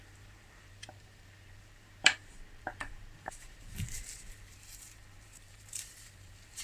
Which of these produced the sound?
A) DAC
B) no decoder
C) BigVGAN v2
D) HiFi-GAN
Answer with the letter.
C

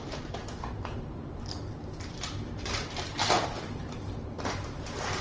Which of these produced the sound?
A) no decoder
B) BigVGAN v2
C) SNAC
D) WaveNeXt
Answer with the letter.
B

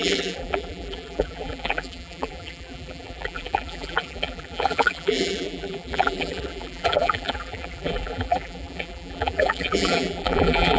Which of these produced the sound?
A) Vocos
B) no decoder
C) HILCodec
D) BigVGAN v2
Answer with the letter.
D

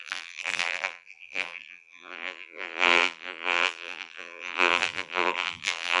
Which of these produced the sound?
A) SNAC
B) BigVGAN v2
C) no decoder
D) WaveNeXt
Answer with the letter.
B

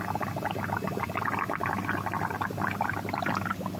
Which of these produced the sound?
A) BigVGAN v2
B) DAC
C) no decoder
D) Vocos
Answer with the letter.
C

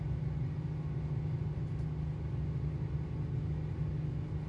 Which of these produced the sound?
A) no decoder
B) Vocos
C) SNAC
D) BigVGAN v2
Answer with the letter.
A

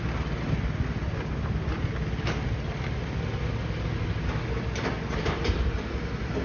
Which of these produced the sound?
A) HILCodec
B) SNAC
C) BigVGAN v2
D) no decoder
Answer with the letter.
D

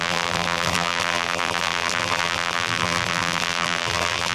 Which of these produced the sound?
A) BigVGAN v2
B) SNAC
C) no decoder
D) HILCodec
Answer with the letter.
A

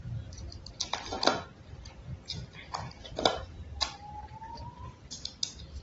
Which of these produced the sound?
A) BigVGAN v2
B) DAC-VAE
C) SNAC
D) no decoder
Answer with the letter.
A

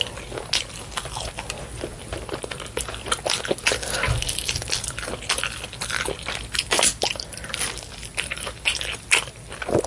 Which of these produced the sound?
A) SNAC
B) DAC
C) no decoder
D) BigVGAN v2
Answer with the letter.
C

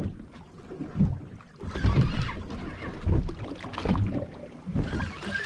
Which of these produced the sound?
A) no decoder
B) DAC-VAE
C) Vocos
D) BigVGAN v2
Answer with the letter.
A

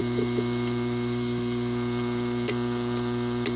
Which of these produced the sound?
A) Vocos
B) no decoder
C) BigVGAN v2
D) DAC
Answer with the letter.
C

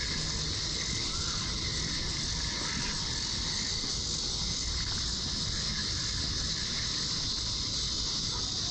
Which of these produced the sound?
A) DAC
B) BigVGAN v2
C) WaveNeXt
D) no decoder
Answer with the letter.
D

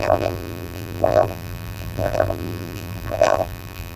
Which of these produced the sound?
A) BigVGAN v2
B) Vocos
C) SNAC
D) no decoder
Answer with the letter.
A